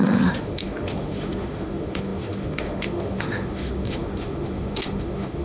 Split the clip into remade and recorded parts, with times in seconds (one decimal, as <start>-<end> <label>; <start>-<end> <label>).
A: 0.0-5.4 remade

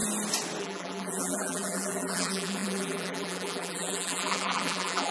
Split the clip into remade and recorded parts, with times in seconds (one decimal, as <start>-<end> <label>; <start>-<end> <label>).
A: 0.0-0.6 recorded; 0.6-5.1 remade